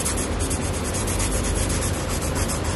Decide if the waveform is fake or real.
real